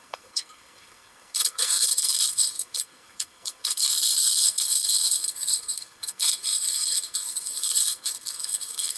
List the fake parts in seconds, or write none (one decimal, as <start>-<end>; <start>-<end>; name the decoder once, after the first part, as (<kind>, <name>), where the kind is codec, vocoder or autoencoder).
0.0-9.0 (codec, SNAC)

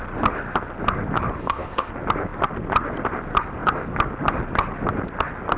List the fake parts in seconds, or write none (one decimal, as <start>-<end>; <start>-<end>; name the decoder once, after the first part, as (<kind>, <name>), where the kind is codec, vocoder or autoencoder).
1.4-1.9 (codec, ZipCodec)

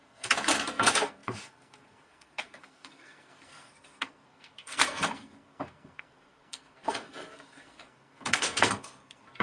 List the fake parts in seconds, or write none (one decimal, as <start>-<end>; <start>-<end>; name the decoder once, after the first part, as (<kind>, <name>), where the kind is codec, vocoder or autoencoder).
0.0-9.4 (codec, SNAC)

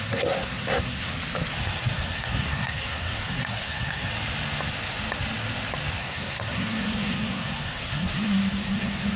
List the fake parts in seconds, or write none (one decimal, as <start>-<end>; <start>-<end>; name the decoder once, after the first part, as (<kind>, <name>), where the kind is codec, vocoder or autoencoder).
0.0-1.1 (codec, SNAC); 1.9-4.1; 6.0-9.2

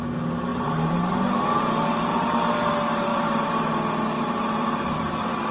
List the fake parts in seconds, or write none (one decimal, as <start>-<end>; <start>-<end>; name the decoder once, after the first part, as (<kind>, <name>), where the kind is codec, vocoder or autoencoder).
0.5-1.6 (vocoder, BigVGAN v2); 2.1-2.7; 3.1-3.7

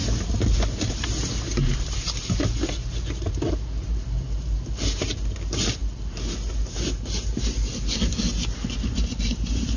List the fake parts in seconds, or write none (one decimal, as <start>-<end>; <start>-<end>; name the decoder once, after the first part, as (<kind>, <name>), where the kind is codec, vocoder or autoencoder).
none